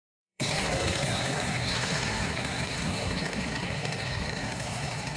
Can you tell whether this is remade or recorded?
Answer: remade